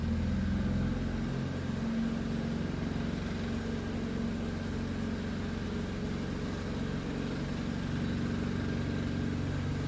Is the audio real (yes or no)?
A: yes